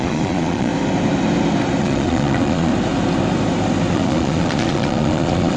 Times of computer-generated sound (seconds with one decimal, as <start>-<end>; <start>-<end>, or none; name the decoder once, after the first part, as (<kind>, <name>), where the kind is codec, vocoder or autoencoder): 0.0-0.7 (vocoder, Vocos); 1.8-2.7; 3.9-5.6